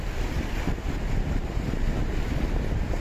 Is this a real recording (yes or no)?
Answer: yes